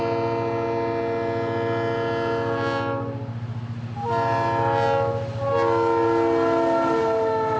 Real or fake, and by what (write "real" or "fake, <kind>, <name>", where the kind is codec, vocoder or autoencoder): real